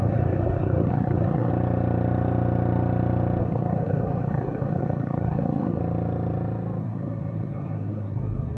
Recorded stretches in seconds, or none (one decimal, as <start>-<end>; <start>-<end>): 1.5-3.4; 5.8-6.8